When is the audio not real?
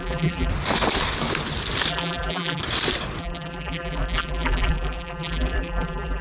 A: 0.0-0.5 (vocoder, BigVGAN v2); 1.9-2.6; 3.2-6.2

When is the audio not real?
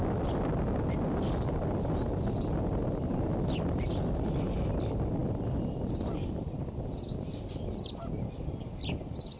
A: none